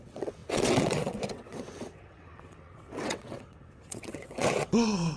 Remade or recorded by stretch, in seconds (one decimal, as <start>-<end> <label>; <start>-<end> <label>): 0.0-5.2 remade

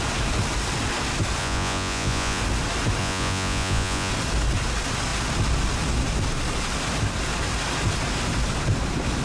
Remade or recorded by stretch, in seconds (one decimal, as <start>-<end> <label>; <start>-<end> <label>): 0.0-1.4 recorded; 1.4-2.4 remade; 2.4-3.0 recorded; 3.0-4.1 remade; 4.1-9.2 recorded

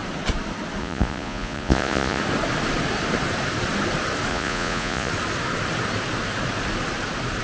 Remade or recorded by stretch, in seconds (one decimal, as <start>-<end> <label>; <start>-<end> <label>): 0.0-0.8 recorded; 0.8-2.2 remade; 2.2-4.3 recorded; 4.3-5.1 remade; 5.1-7.4 recorded

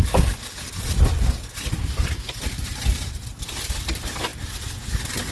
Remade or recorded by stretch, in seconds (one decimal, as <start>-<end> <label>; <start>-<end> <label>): 0.0-5.3 recorded

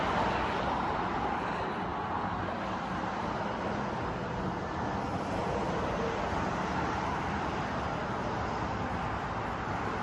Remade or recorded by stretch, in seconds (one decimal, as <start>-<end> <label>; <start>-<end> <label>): 0.0-10.0 recorded

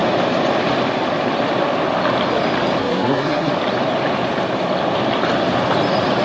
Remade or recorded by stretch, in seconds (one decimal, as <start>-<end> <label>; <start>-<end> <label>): 0.0-2.8 recorded; 2.8-3.5 remade; 3.5-6.2 recorded